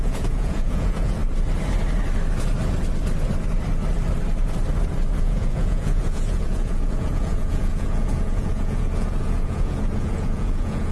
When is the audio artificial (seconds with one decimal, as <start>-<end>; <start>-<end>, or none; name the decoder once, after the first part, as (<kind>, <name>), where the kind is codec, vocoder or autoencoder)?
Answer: 0.0-1.2 (vocoder, Vocos); 5.2-10.9